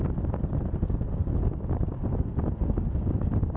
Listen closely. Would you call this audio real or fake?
real